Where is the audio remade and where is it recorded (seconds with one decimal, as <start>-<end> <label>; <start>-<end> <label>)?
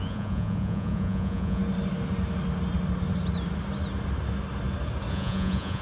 0.0-1.6 remade; 1.6-5.1 recorded; 5.1-5.8 remade